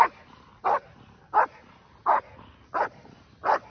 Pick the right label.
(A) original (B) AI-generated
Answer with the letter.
A